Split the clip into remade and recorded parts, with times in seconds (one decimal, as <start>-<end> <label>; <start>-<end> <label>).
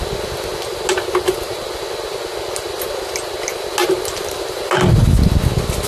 0.0-5.9 recorded